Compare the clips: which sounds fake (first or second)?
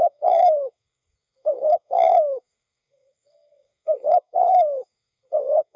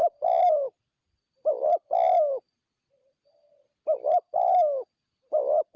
first